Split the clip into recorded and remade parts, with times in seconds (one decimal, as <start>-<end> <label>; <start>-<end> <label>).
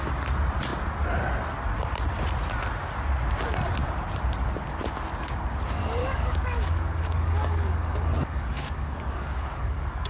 0.0-6.0 recorded; 6.0-10.1 remade